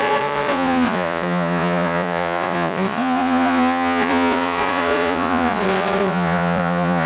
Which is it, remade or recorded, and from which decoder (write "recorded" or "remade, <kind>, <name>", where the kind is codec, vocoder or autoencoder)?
remade, vocoder, Vocos